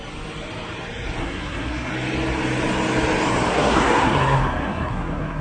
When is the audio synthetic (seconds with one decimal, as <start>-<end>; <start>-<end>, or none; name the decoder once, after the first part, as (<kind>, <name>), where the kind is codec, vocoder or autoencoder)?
1.2-1.9 (codec, SNAC); 3.5-5.4